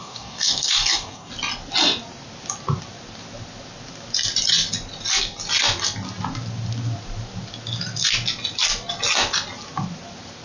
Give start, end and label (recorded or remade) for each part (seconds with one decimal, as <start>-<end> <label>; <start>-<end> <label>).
0.0-1.3 remade; 1.3-10.4 recorded